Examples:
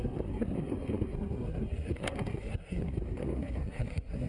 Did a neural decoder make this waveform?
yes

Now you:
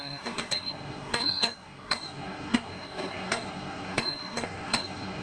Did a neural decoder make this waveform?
yes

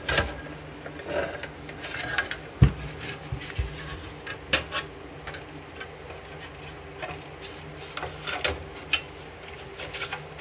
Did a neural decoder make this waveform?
no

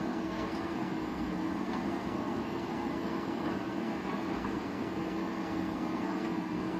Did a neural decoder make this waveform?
yes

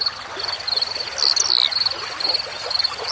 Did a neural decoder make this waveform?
no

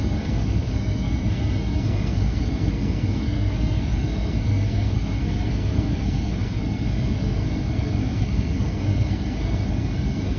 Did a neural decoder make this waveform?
yes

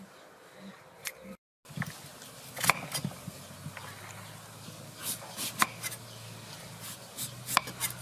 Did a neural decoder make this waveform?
no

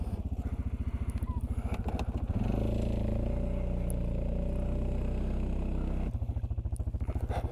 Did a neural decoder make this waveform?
no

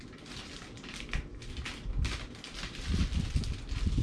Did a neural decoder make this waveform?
no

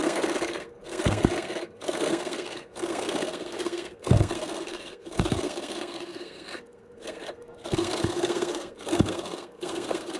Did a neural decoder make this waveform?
yes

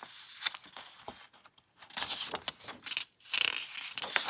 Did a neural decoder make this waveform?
no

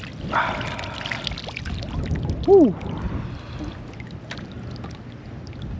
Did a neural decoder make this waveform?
no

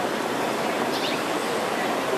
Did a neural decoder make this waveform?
no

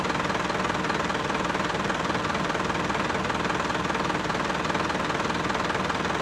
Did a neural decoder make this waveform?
no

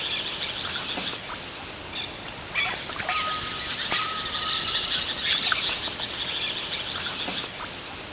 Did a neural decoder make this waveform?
no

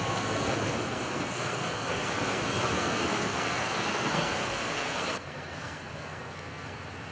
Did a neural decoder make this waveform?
yes